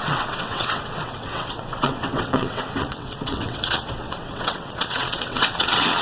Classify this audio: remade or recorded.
remade